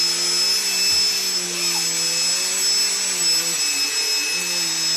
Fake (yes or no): no